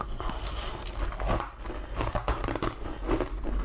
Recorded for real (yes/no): yes